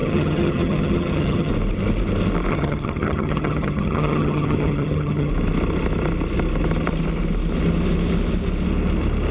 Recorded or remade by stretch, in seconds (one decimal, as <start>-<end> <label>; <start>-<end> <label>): 0.0-1.5 remade; 1.5-2.5 recorded; 2.5-5.3 remade; 5.3-9.3 recorded